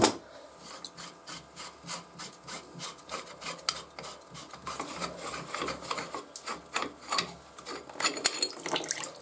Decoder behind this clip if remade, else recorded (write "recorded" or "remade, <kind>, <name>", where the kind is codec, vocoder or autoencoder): recorded